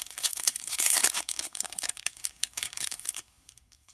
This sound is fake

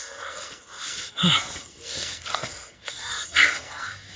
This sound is fake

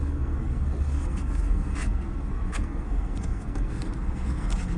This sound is fake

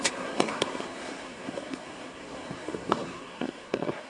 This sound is fake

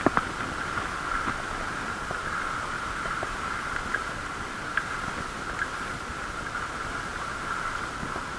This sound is real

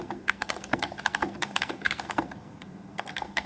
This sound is fake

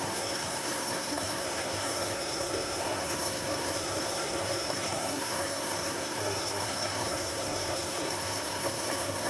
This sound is fake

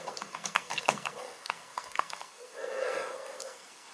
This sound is fake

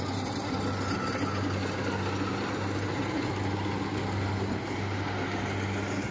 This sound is real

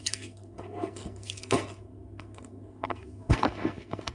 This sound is fake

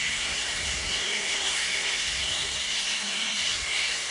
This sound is fake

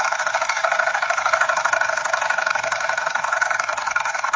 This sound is fake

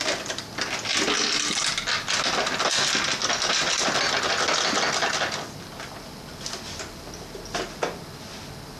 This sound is real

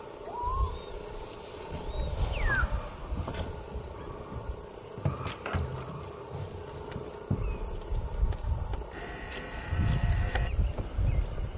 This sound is real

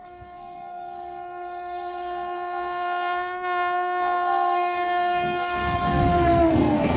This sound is fake